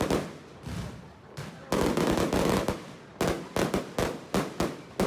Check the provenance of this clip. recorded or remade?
recorded